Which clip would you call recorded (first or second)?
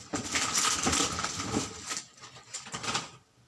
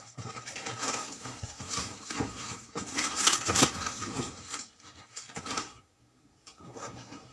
first